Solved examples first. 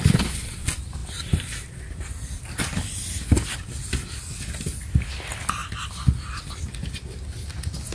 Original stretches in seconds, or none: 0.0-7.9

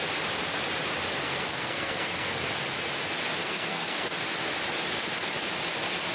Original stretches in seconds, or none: 0.0-1.2; 2.4-3.4; 4.1-6.1

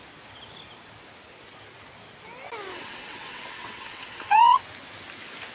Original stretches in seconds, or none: 0.0-2.7; 4.6-5.5

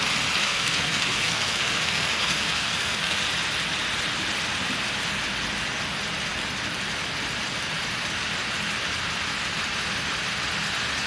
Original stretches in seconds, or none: 0.0-0.4; 3.2-11.1

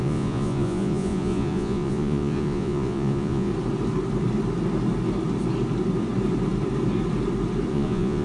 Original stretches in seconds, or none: 3.5-7.7

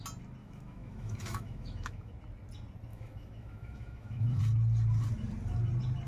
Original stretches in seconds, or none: 0.0-0.4; 2.1-2.9; 4.4-6.1

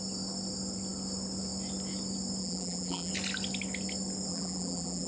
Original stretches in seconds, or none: 0.0-2.4; 3.1-4.3

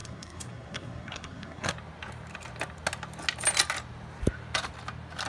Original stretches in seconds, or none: 1.7-5.3